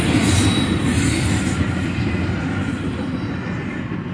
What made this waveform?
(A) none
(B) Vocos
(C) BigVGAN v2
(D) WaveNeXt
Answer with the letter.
A